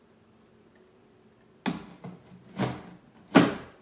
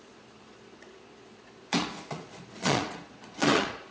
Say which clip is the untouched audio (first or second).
first